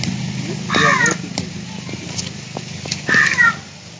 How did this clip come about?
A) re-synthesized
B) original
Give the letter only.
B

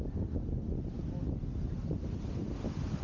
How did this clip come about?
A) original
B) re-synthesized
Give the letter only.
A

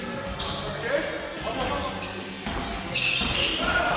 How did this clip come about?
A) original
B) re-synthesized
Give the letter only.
A